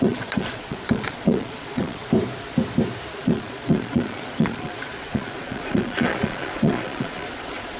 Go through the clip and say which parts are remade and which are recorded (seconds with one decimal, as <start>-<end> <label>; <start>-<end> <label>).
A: 0.0-2.0 remade; 2.0-3.2 recorded; 3.2-7.8 remade